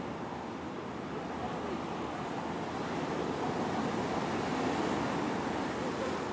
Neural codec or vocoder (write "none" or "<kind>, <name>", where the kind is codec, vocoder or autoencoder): none